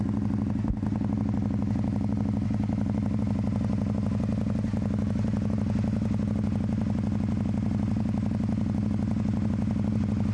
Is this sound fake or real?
real